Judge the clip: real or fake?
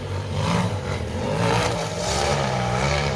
fake